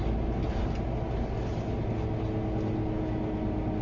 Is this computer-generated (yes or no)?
no